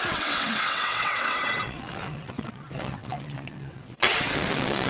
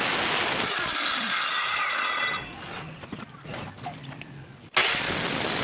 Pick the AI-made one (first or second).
first